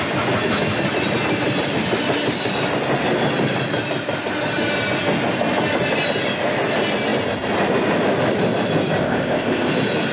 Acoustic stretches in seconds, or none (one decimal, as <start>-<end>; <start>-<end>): 0.0-9.0; 9.7-10.1